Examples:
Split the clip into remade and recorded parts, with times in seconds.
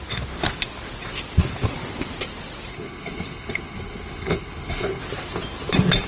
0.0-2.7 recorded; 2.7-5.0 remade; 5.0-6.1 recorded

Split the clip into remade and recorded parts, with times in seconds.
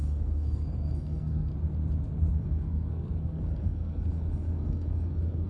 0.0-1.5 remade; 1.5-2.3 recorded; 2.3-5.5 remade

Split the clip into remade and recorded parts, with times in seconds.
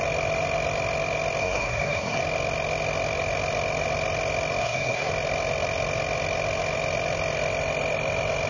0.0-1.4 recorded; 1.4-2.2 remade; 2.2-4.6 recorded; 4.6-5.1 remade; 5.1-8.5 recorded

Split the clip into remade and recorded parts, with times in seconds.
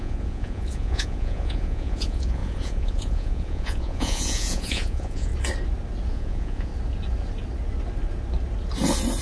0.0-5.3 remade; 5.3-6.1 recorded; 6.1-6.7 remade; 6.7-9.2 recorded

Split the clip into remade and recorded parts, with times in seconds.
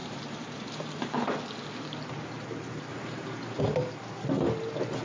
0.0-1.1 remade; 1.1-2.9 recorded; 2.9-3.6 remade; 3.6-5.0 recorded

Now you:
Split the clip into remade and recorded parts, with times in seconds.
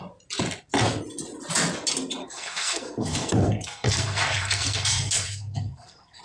0.0-2.2 recorded; 2.2-6.2 remade